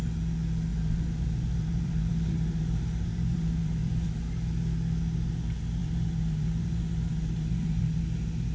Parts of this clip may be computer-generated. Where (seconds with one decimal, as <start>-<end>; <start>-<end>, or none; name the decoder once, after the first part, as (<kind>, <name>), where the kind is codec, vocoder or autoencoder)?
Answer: 0.7-4.2 (vocoder, BigVGAN v2); 5.8-8.0